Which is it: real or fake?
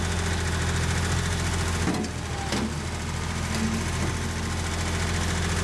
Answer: real